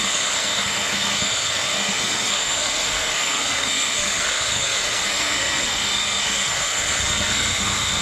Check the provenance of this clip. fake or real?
fake